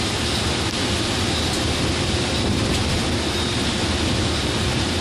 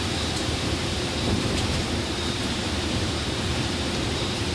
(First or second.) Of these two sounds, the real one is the first